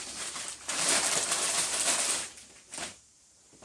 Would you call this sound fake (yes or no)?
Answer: yes